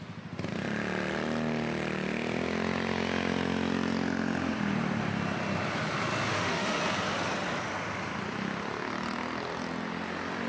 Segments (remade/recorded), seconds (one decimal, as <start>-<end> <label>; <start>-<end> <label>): 0.0-6.3 recorded; 6.3-6.8 remade; 6.8-10.5 recorded